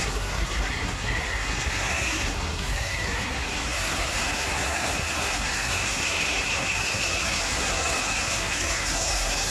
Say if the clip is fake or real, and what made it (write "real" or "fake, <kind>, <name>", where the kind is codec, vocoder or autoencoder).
fake, codec, SNAC